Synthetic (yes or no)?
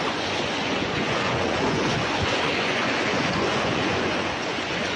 yes